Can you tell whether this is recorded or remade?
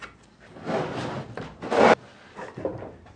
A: recorded